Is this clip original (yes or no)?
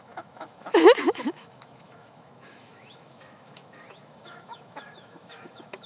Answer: no